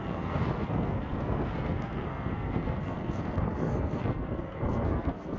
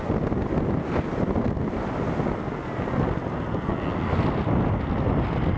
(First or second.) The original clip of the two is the second